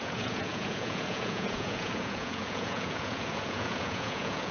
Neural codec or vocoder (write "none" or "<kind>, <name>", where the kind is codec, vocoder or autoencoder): vocoder, Vocos